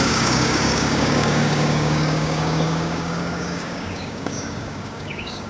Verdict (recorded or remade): remade